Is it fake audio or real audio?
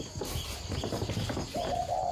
real